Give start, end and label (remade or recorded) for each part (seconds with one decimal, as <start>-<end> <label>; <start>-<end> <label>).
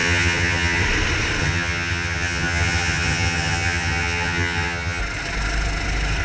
0.0-0.8 remade; 0.8-1.4 recorded; 1.4-5.0 remade; 5.0-6.2 recorded